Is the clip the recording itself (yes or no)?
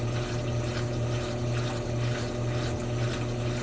yes